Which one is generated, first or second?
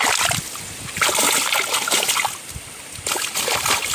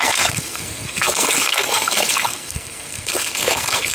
second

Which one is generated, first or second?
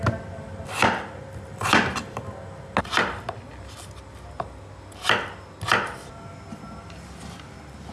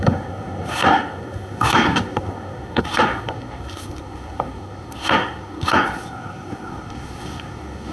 second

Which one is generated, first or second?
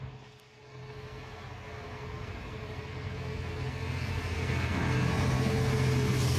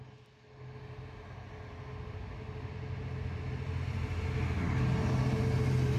first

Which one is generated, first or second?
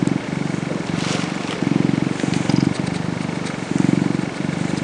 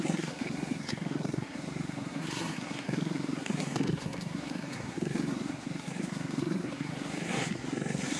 second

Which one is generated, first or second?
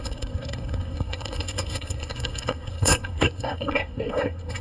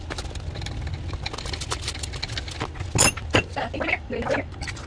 first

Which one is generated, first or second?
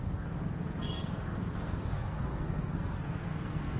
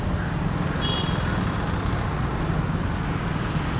first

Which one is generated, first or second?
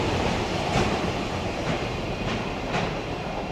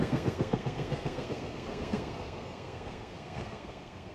second